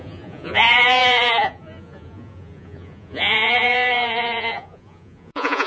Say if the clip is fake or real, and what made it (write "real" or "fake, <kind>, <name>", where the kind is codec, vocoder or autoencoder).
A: fake, vocoder, Vocos